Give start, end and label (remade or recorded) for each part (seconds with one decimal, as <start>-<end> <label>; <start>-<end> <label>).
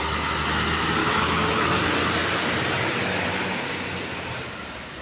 0.0-1.0 recorded; 1.0-1.8 remade; 1.8-5.0 recorded